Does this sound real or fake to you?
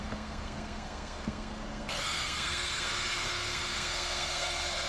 fake